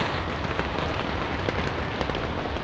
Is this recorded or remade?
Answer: recorded